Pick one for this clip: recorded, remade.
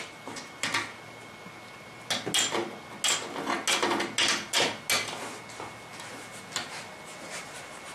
recorded